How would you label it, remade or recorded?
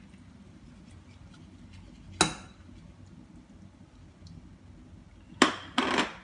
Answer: recorded